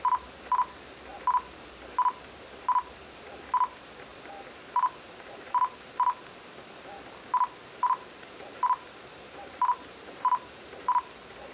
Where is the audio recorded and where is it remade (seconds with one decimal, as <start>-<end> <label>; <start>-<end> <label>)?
0.0-4.1 recorded; 4.1-6.3 remade; 6.3-7.6 recorded; 7.6-11.0 remade; 11.0-11.5 recorded